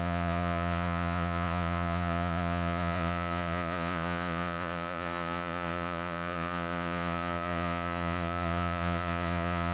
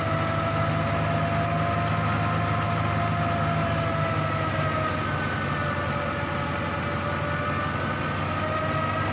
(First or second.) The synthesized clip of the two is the first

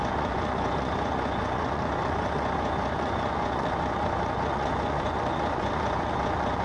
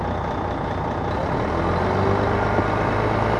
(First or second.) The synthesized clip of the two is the first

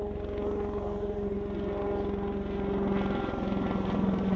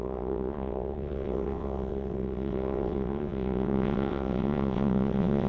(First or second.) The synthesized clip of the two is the second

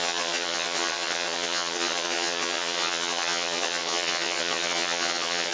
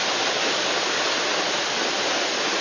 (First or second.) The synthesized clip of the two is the first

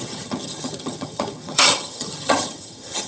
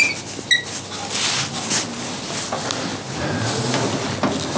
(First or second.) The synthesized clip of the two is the first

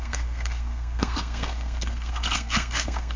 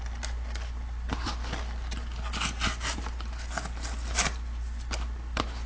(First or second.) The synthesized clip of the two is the first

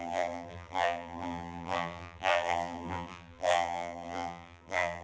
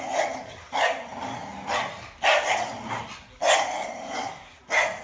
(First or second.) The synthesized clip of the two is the first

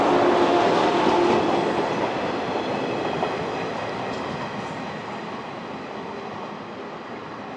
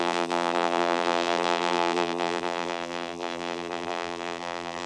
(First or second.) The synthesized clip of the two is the second